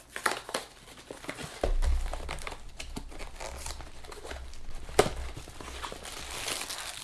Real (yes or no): yes